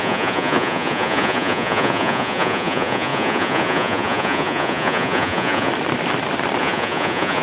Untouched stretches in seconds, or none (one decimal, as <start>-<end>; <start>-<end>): 5.7-6.6